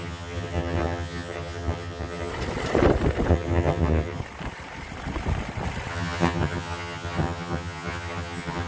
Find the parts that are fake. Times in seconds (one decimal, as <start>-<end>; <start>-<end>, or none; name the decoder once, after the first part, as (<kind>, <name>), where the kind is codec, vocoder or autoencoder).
0.0-2.3 (vocoder, HiFi-GAN); 3.3-4.2; 5.9-8.7